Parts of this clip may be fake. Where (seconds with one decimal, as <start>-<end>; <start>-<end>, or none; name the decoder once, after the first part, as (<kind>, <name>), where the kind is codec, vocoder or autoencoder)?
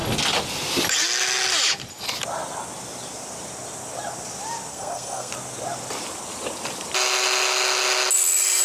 4.7-5.3 (codec, SNAC)